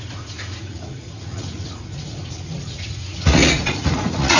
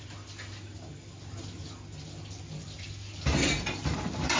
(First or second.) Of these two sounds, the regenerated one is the first